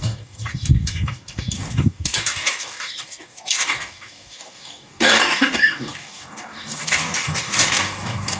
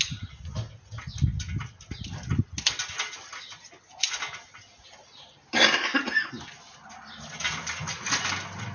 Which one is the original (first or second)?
second